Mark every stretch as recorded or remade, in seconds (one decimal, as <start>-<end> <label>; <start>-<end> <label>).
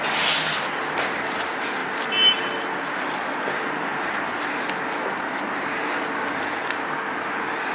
0.0-7.7 recorded